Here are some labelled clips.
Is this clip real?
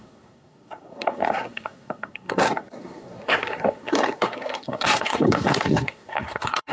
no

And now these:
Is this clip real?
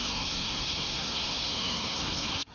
no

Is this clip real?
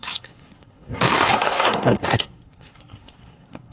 no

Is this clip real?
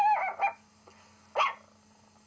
yes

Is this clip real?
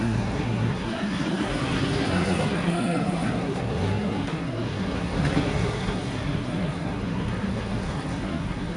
no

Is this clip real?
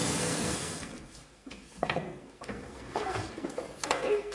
no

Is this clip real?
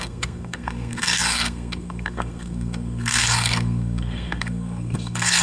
no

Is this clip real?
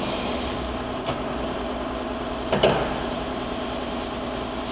yes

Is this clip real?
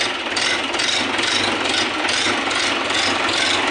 yes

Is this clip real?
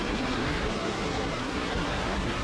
no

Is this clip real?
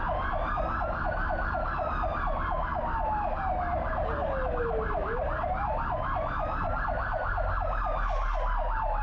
yes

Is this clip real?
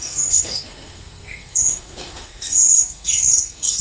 no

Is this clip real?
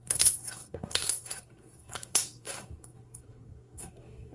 no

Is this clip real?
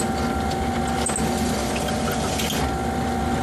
yes